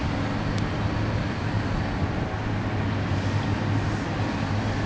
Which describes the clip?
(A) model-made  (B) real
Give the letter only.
B